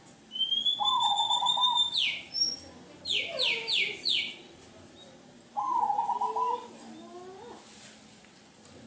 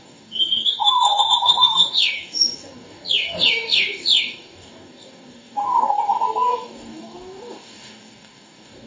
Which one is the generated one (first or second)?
second